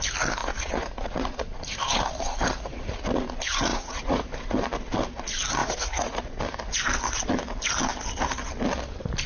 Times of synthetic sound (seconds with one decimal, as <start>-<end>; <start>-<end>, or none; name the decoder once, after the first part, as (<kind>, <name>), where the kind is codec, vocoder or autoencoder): 0.4-1.6 (vocoder, Vocos); 3.7-4.3; 5.6-6.4